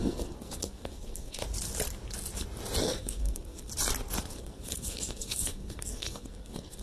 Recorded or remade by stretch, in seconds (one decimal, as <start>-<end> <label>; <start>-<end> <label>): 0.0-1.4 remade; 1.4-2.8 recorded; 2.8-3.7 remade; 3.7-4.3 recorded; 4.3-6.8 remade